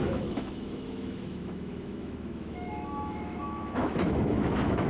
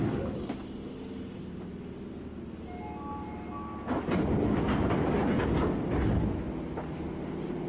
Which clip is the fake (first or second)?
first